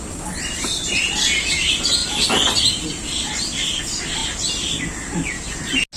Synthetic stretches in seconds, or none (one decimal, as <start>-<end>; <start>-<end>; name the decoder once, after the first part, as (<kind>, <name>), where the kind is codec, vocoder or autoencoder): 2.0-3.8 (vocoder, BigVGAN v2)